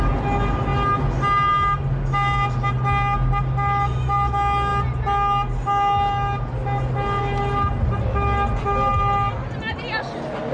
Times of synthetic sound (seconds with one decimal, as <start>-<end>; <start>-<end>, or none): none